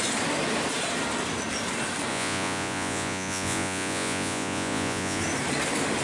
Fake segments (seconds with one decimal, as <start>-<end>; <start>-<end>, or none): 2.1-5.2